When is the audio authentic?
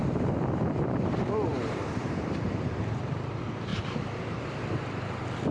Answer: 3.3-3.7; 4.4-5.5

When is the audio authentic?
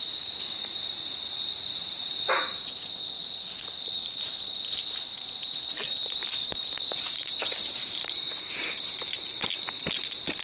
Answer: 0.0-1.7; 2.3-3.2; 4.6-5.9; 8.3-10.4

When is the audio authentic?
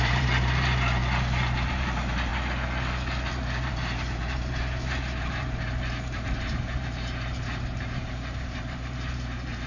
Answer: 1.0-1.7; 2.3-3.3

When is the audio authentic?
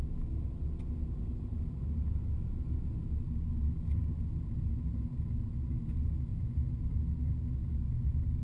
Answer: 0.0-6.3; 7.2-8.4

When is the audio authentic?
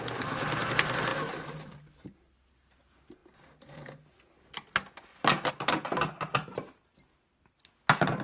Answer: 0.0-1.1; 1.8-8.2